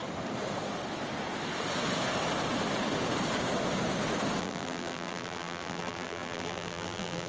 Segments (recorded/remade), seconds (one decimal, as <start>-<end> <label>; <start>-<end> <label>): 0.0-4.4 recorded; 4.4-7.3 remade